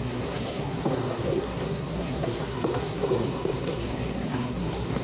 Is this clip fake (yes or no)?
yes